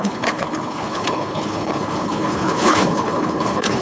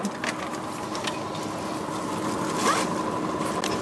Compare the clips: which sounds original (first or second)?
second